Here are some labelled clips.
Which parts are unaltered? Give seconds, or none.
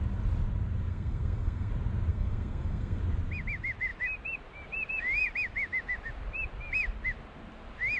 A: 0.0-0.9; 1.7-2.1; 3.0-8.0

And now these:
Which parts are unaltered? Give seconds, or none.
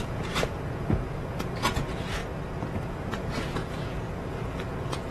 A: 2.2-2.7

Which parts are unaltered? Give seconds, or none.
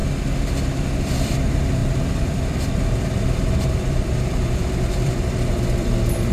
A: 0.0-0.8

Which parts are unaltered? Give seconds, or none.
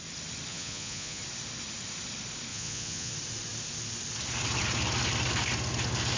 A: 0.0-0.5; 1.2-2.5; 3.1-6.2